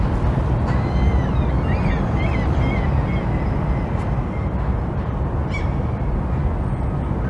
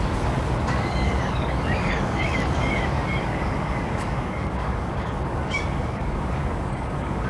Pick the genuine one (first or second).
first